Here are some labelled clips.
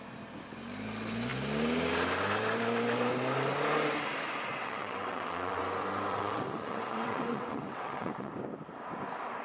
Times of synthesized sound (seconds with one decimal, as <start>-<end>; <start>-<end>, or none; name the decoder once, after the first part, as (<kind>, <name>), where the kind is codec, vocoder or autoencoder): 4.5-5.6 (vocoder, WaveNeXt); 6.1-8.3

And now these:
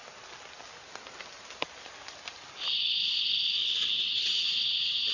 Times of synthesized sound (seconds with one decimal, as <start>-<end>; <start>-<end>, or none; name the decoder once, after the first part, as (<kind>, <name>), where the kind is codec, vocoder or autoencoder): 3.6-5.1 (vocoder, WaveNeXt)

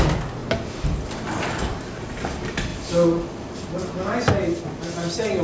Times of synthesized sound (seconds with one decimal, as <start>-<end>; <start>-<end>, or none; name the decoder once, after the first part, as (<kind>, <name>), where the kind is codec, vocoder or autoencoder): none

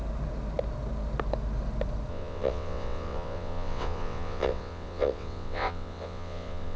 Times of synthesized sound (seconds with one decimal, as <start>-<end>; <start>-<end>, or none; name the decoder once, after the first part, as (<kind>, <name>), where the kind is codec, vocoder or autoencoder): 2.1-6.8 (vocoder, WaveNeXt)

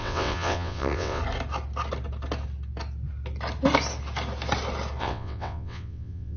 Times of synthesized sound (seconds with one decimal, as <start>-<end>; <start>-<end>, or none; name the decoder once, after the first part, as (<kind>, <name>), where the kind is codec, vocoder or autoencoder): 0.0-1.2 (vocoder, WaveNeXt); 5.0-6.4

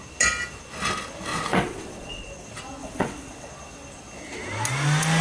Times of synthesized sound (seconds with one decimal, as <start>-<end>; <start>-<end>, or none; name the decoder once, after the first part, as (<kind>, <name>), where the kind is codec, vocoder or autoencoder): 1.3-2.3 (vocoder, WaveNeXt); 2.8-3.5